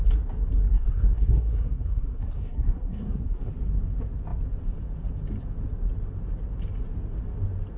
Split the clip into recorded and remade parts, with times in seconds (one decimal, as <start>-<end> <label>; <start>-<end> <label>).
0.0-0.7 recorded; 0.7-3.5 remade; 3.5-7.8 recorded